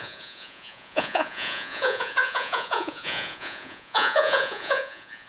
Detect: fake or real fake